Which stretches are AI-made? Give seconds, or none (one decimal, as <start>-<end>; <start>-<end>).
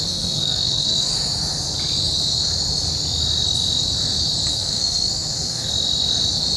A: 0.0-1.1; 4.5-5.7